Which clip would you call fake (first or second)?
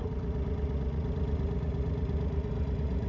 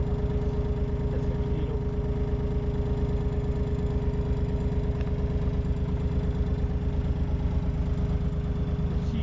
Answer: first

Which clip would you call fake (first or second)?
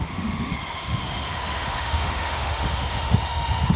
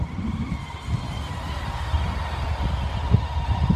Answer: first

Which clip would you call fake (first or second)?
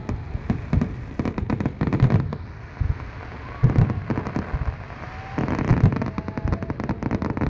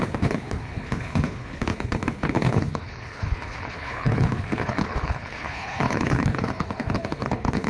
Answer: second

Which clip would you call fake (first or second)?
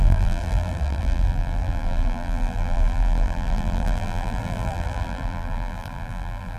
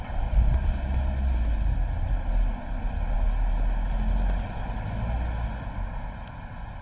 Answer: first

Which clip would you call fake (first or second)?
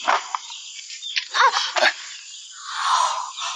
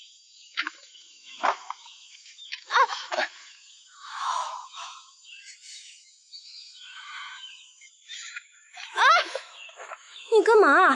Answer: second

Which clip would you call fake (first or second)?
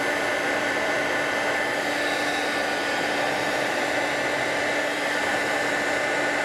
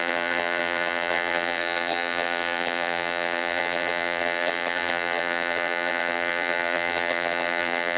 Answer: second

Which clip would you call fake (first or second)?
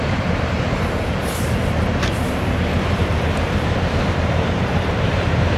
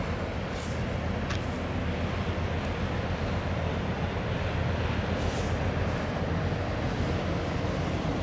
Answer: first